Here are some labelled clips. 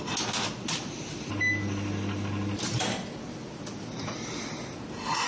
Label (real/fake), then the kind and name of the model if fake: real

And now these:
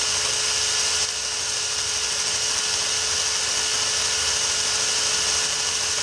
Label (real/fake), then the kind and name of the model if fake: real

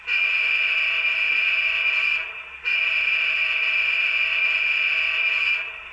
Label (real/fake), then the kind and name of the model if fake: fake, vocoder, Vocos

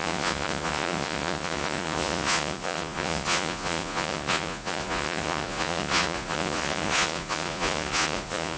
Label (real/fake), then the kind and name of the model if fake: fake, vocoder, Vocos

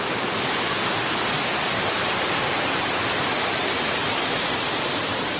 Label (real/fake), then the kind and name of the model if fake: real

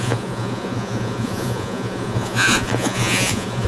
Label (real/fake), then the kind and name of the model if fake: fake, vocoder, Vocos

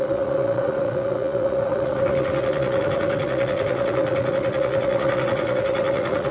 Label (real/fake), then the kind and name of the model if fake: fake, vocoder, Vocos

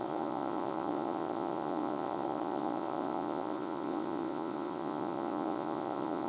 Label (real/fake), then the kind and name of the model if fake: fake, vocoder, Vocos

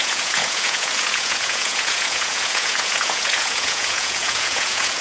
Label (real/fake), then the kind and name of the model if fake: fake, vocoder, Vocos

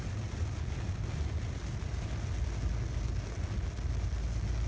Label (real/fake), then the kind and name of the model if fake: real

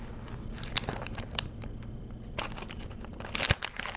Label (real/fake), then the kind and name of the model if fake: real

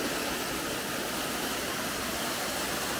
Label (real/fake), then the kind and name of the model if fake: real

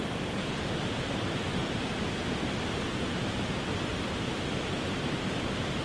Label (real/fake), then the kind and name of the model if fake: real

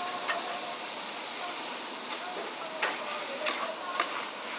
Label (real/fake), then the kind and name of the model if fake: real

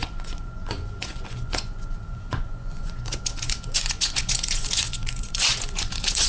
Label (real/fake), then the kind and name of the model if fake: fake, vocoder, Vocos